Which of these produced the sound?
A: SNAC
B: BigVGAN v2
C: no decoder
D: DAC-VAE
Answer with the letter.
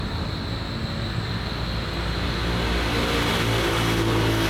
C